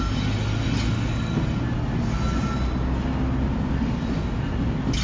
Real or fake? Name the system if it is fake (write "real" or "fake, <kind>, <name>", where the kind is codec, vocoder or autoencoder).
real